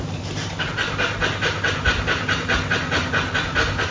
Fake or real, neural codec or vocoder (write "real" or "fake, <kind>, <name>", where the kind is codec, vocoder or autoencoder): real